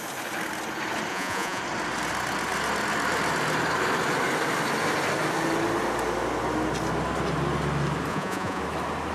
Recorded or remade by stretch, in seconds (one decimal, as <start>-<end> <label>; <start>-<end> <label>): 0.0-1.1 recorded; 1.1-1.6 remade; 1.6-8.1 recorded; 8.1-8.6 remade; 8.6-9.1 recorded

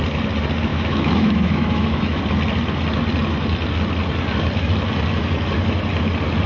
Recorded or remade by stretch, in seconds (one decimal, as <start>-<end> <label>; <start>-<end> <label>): 0.0-0.7 recorded; 0.7-2.2 remade; 2.2-6.5 recorded

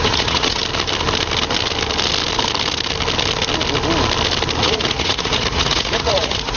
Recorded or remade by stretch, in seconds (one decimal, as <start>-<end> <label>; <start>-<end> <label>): 0.0-0.6 remade; 0.6-4.6 recorded; 4.6-6.6 remade

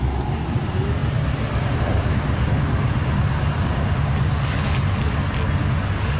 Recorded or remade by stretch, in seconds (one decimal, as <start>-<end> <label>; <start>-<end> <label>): 0.0-6.2 recorded

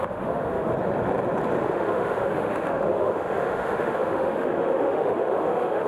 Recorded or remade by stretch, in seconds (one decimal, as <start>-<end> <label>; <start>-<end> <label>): 0.0-0.7 remade; 0.7-1.6 recorded; 1.6-5.9 remade

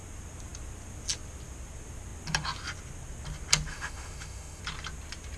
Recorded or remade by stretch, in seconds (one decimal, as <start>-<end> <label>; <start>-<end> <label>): 0.0-3.7 recorded; 3.7-4.6 remade; 4.6-5.4 recorded

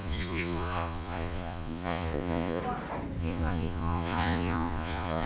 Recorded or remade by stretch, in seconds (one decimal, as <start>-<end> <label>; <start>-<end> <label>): 0.0-2.6 remade; 2.6-3.2 recorded; 3.2-5.3 remade

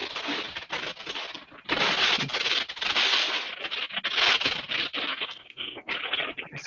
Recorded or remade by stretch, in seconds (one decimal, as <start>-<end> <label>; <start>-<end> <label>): 0.0-5.1 recorded; 5.1-5.9 remade; 5.9-6.7 recorded